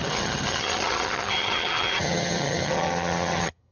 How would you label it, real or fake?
fake